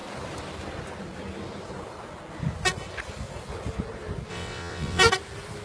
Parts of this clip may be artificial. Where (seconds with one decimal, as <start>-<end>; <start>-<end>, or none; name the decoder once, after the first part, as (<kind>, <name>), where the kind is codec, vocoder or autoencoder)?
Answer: 4.3-5.0 (vocoder, WaveNeXt)